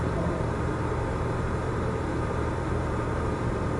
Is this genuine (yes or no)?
no